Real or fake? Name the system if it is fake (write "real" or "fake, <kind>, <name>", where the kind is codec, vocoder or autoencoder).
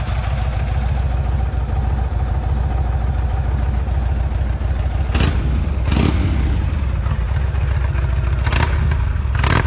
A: real